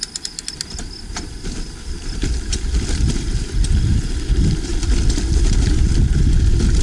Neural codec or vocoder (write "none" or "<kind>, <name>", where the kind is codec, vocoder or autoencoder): none